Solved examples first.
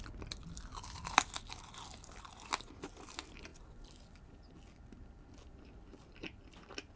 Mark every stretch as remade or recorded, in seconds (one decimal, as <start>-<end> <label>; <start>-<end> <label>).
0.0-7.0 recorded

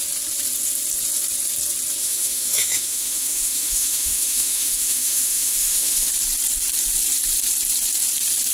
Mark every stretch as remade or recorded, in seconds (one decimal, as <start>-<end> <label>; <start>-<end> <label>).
0.0-2.0 recorded; 2.0-6.1 remade; 6.1-8.5 recorded

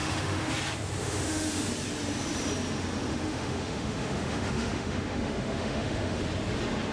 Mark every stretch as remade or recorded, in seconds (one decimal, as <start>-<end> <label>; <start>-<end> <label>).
0.0-0.5 remade; 0.5-1.0 recorded; 1.0-1.7 remade; 1.7-3.1 recorded; 3.1-6.2 remade; 6.2-6.9 recorded